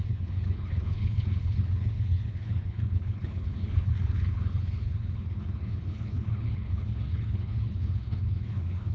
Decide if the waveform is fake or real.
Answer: fake